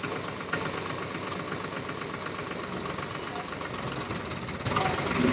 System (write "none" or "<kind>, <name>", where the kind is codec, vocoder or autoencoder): none